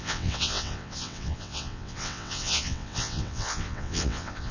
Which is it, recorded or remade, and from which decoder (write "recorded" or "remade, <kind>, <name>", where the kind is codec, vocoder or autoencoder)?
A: remade, vocoder, WaveNeXt